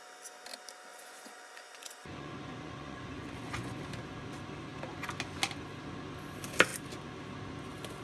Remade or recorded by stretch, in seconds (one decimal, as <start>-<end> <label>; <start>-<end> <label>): 0.0-0.9 recorded; 0.9-3.8 remade; 3.8-8.0 recorded